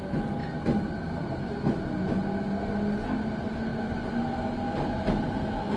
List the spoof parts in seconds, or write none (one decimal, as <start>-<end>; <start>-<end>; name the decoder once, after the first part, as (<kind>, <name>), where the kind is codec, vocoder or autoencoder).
none